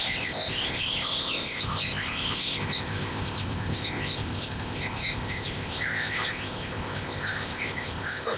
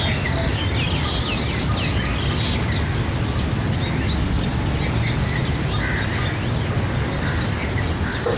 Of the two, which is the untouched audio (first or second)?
second